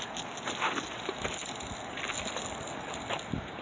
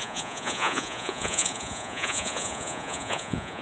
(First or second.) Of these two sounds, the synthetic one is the second